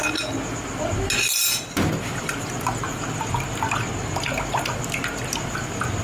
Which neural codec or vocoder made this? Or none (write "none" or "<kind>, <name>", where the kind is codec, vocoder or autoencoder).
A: none